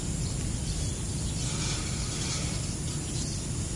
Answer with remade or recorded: remade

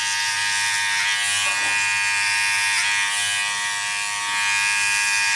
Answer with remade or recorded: recorded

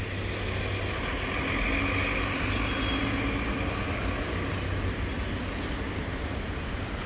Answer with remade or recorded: recorded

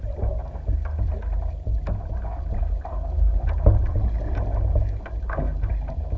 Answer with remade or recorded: recorded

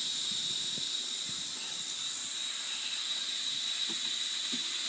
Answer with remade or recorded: recorded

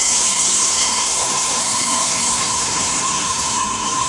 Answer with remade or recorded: remade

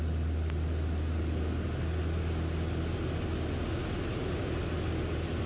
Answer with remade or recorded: recorded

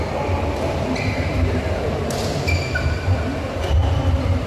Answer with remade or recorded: recorded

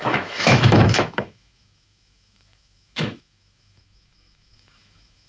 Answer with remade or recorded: remade